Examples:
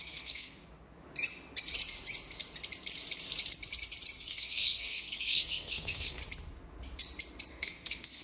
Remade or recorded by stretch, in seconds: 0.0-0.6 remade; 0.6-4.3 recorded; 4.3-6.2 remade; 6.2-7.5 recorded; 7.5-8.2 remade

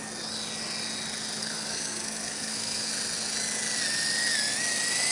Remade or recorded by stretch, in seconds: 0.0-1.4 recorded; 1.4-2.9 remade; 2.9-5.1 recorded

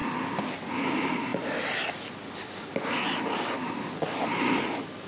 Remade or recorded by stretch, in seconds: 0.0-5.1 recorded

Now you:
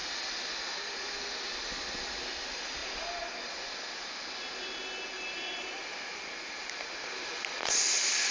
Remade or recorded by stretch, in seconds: 0.0-8.3 recorded